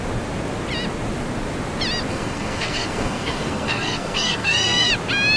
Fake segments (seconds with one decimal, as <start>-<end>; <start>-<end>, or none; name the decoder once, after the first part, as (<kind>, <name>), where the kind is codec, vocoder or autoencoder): 2.1-4.9 (codec, SNAC)